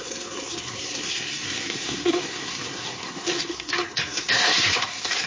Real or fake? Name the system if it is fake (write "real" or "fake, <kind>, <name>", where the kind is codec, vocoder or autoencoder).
fake, codec, SNAC